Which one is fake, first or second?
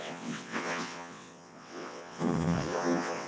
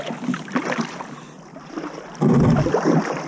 first